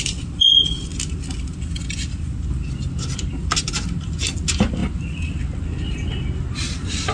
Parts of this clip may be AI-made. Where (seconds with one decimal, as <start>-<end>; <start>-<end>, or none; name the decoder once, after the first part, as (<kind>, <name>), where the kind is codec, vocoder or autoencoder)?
none